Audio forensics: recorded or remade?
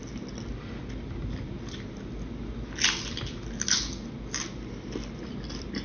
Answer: recorded